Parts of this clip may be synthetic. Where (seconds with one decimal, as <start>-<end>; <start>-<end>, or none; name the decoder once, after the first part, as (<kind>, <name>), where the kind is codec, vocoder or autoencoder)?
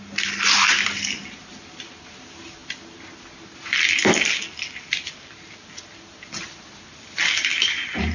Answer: none